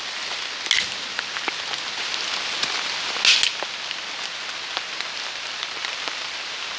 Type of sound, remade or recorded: recorded